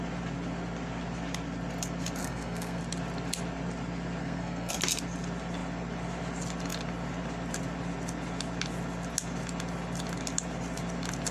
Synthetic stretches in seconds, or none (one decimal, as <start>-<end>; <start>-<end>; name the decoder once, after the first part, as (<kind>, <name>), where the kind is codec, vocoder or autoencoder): 2.2-2.8 (codec, SNAC); 4.2-4.7